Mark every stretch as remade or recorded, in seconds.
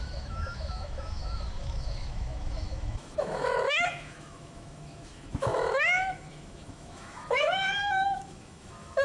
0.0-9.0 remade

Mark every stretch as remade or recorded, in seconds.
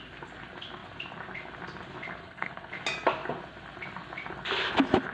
0.0-2.2 recorded; 2.2-2.7 remade; 2.7-5.1 recorded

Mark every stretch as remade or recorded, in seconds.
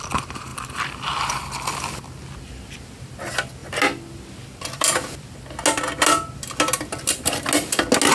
0.0-0.5 recorded; 0.5-1.4 remade; 1.4-8.1 recorded